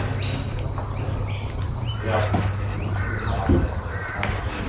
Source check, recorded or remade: recorded